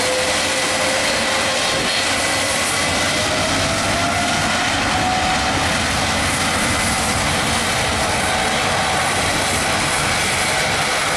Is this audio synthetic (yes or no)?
no